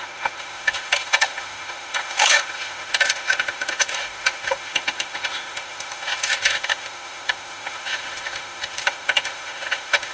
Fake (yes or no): yes